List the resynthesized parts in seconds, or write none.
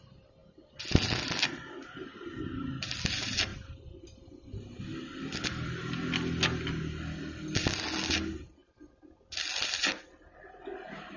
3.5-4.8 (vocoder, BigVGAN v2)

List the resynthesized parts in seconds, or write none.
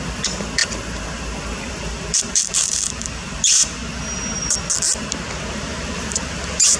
0.0-3.8 (vocoder, BigVGAN v2); 5.5-6.8